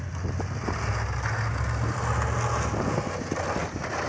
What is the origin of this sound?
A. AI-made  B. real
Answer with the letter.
B